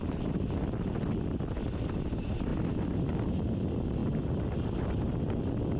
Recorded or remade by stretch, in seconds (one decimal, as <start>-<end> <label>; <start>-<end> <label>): 0.0-5.8 recorded